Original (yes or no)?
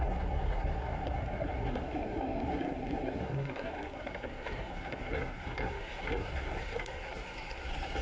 no